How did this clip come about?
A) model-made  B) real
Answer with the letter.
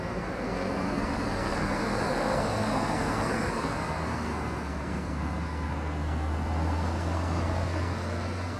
A